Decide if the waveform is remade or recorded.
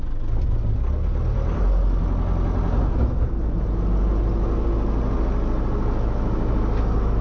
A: recorded